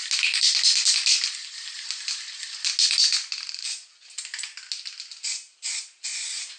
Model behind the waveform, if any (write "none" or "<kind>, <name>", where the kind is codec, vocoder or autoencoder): none